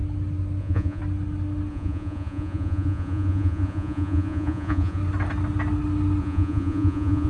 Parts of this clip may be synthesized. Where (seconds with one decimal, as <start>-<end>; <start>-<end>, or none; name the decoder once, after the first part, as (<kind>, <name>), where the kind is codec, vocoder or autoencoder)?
0.6-1.0 (vocoder, Vocos); 1.7-5.0; 6.2-7.3